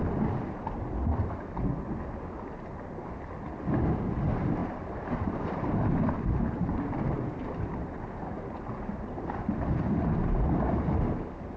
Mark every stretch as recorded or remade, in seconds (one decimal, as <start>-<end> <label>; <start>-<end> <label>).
0.0-4.6 recorded; 4.6-6.4 remade; 6.4-11.6 recorded